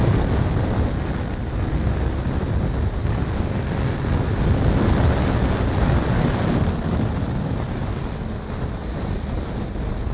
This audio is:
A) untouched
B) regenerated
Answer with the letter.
A